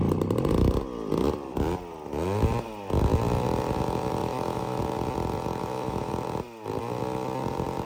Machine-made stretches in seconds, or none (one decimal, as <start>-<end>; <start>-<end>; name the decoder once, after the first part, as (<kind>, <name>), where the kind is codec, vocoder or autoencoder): 4.2-4.8 (autoencoder, DAC-VAE); 5.6-6.1